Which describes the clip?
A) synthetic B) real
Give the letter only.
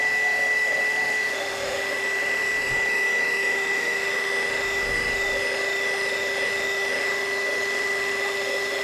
A